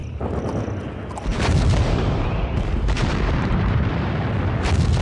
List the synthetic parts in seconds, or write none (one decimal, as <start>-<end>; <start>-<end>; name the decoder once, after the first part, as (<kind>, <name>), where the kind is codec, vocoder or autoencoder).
1.3-4.3 (vocoder, BigVGAN v2)